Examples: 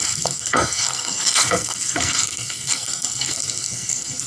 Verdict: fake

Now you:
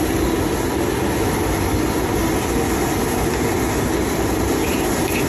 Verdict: real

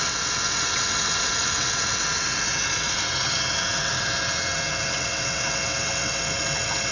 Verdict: fake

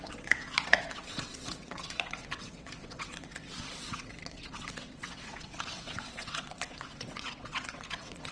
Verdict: fake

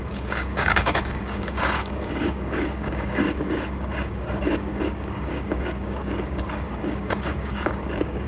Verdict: fake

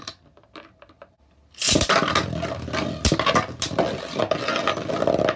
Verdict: real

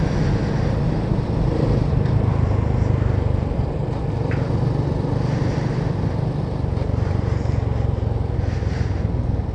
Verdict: real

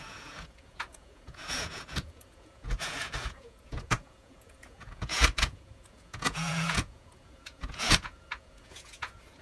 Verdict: fake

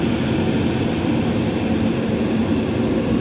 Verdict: real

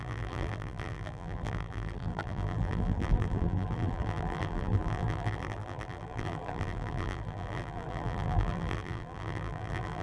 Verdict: fake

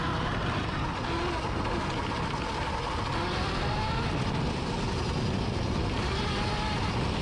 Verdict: real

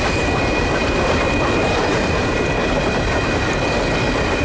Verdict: fake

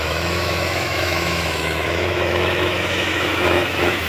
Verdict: fake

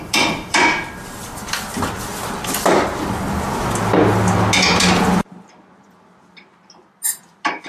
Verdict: real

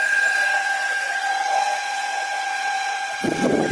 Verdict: fake